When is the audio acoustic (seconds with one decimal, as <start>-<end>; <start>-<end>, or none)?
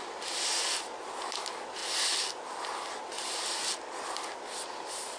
0.0-5.2